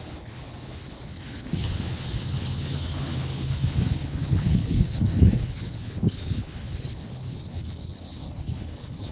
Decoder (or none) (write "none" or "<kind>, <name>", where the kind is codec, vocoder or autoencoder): codec, HILCodec